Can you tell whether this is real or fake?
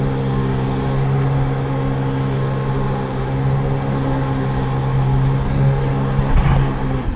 real